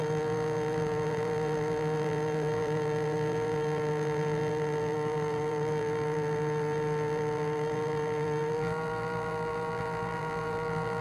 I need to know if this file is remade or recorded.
remade